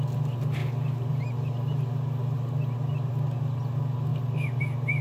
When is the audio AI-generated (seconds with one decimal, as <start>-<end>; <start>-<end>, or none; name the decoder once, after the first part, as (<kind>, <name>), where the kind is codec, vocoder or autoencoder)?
0.6-1.1 (vocoder, BigVGAN v2); 4.1-4.6